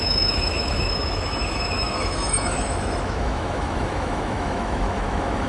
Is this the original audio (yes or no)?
no